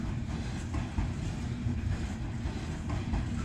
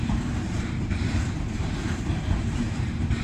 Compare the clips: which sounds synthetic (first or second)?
second